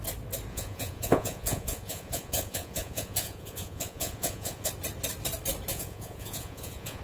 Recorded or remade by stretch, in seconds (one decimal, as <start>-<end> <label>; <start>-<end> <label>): 0.0-0.5 recorded; 0.5-4.7 remade; 4.7-5.7 recorded; 5.7-7.0 remade